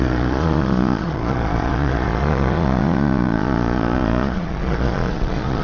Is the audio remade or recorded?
remade